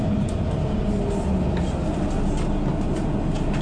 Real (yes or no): yes